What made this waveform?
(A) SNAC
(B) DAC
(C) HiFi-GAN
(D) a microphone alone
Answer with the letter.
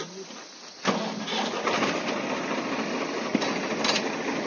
D